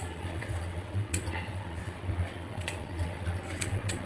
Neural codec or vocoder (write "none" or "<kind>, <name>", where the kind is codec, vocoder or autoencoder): vocoder, WaveNeXt